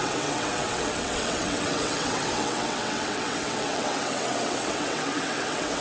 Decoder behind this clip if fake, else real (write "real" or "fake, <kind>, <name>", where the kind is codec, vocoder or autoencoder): fake, vocoder, WaveNeXt